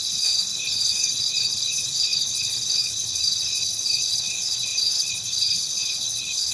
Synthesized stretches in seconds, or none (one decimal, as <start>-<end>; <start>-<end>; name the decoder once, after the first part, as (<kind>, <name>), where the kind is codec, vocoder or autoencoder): 0.0-6.5 (codec, HILCodec)

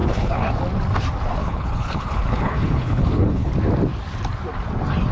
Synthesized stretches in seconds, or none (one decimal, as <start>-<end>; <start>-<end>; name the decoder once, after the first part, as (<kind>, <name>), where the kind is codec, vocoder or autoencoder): 0.0-0.5 (codec, HILCodec); 1.4-3.5